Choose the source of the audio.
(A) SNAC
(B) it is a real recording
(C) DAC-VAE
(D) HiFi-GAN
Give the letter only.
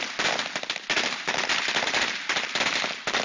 B